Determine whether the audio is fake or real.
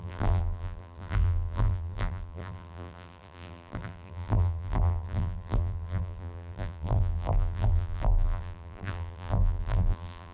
fake